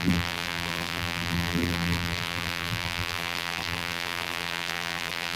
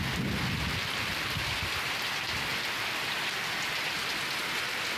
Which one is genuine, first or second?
second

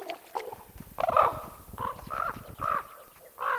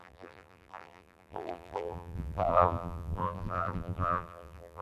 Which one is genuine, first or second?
first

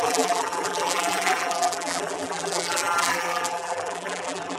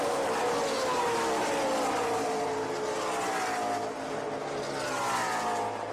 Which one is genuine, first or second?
second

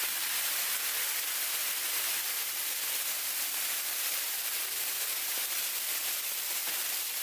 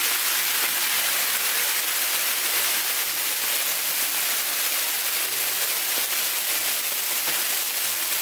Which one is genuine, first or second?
second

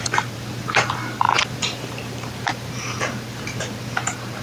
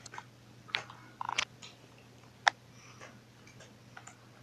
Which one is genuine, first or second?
second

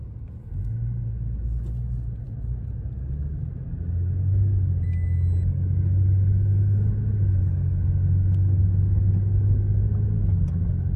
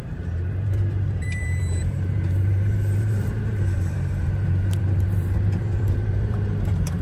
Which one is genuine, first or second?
first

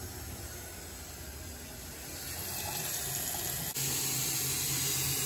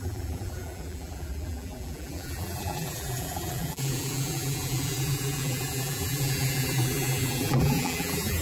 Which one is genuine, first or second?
first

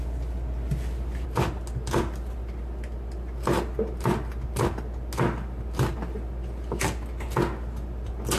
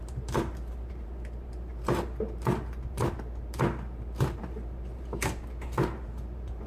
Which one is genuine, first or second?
first